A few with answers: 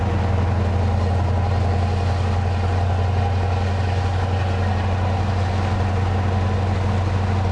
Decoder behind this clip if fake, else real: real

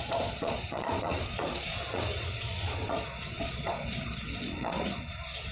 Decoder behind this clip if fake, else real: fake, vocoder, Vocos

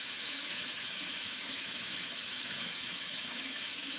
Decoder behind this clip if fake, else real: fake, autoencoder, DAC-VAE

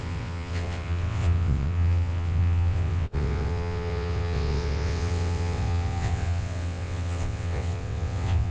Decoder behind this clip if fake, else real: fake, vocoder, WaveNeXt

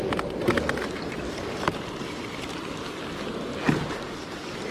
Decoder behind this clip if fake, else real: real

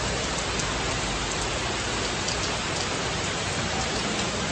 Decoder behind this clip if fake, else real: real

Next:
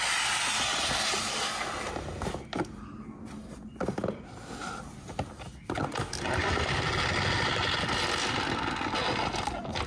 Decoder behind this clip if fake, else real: real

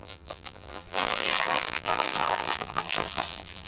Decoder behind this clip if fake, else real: fake, vocoder, BigVGAN v2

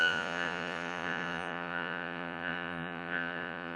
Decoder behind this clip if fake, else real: fake, vocoder, Vocos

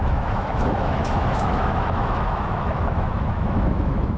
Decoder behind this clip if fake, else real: fake, autoencoder, DAC-VAE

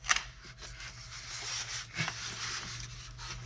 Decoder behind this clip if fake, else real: real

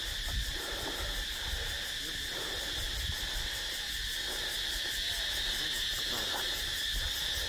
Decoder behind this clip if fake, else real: real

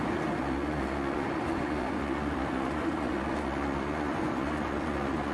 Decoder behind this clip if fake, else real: fake, vocoder, Vocos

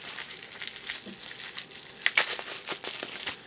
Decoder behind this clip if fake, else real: real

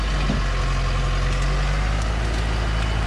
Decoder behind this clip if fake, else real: real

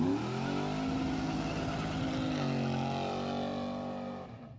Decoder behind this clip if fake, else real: real